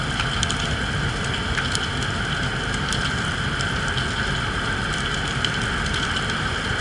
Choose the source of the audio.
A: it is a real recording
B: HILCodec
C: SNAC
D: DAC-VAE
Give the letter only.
A